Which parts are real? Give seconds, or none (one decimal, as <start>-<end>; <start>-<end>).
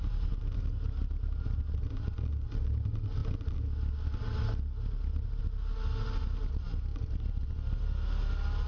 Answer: 0.0-8.7